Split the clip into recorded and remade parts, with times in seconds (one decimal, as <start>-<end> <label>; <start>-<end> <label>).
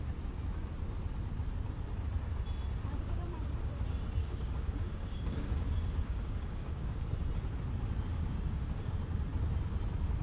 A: 0.0-4.2 recorded; 4.2-6.8 remade; 6.8-8.1 recorded; 8.1-8.9 remade; 8.9-10.2 recorded